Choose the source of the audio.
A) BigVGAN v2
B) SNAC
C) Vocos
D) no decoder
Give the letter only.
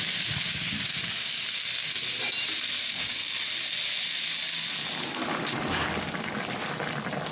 D